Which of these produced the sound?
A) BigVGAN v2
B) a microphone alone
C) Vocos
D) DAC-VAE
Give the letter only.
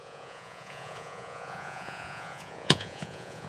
C